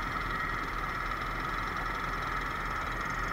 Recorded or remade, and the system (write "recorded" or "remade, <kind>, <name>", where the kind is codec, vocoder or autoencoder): recorded